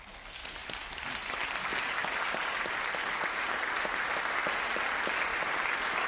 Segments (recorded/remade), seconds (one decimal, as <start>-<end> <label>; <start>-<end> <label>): 0.0-0.4 recorded; 0.4-1.2 remade; 1.2-1.7 recorded; 1.7-2.7 remade; 2.7-5.3 recorded; 5.3-6.1 remade